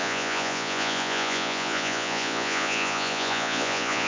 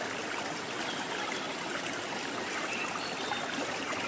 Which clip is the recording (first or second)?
second